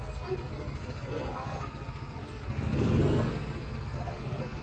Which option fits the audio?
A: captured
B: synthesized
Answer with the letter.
B